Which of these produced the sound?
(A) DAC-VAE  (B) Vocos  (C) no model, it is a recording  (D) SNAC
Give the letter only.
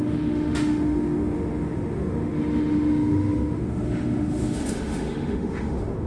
A